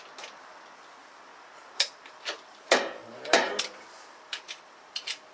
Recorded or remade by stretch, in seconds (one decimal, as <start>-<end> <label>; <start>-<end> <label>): 0.0-1.3 recorded; 1.3-4.5 remade; 4.5-5.3 recorded